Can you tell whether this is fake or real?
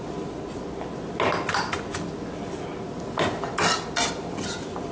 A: real